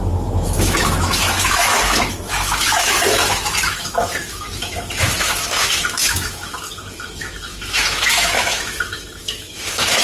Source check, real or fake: fake